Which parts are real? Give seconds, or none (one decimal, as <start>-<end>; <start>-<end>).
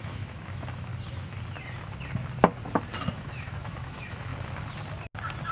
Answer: 0.9-3.1; 4.3-5.5